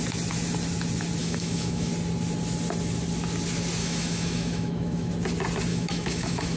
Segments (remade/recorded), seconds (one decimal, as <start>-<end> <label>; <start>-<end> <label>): 0.0-1.2 recorded; 1.2-1.9 remade; 1.9-3.8 recorded; 3.8-5.1 remade; 5.1-5.7 recorded; 5.7-6.6 remade